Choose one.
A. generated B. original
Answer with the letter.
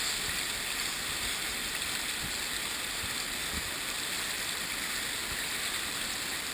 B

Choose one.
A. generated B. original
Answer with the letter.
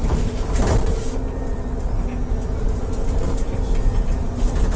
B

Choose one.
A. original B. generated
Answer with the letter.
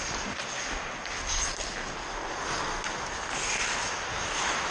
A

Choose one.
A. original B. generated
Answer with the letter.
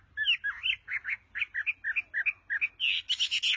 A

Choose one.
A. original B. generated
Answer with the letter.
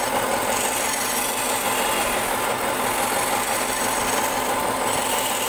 A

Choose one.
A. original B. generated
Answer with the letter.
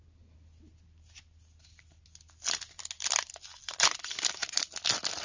A